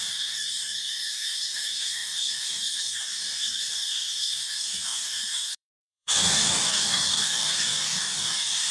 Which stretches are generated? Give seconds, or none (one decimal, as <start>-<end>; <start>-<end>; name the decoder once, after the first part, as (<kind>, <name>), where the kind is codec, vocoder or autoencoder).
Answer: 0.0-8.7 (codec, DAC)